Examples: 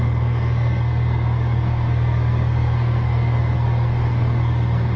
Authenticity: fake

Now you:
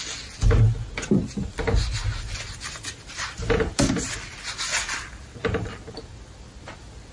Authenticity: real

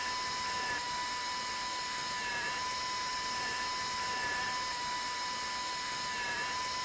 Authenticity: real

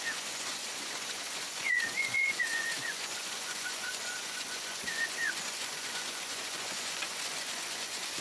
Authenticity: fake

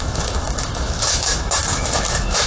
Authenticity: fake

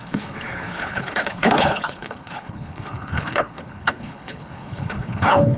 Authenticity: fake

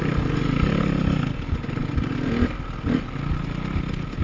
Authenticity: real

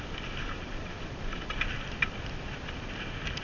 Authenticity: real